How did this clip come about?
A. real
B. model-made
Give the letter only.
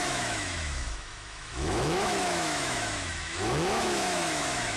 B